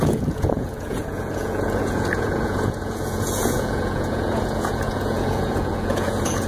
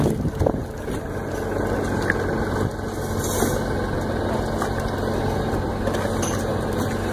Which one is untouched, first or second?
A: second